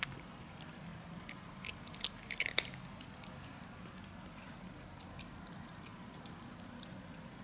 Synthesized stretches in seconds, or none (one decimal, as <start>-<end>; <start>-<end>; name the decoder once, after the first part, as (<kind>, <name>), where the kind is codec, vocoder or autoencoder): none